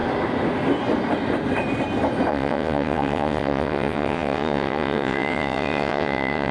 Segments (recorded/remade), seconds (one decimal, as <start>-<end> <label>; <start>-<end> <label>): 0.0-2.3 recorded; 2.3-6.5 remade